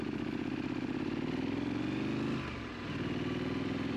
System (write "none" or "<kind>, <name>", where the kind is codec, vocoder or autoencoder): none